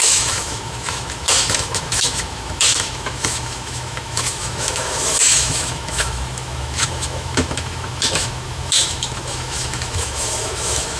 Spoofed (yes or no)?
yes